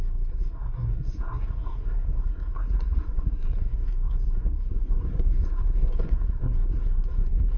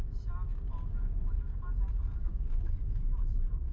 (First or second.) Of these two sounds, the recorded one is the second